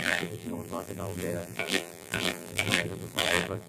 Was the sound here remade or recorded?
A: remade